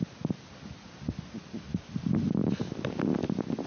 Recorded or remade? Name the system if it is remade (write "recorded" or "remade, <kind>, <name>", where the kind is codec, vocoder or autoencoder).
recorded